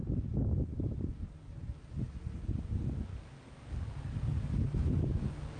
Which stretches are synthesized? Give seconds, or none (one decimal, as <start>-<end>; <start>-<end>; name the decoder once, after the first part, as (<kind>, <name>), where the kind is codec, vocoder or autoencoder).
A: 3.1-5.6 (codec, DAC)